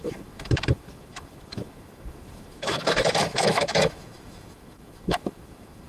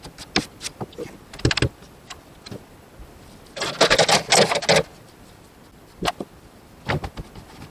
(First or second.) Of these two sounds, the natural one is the second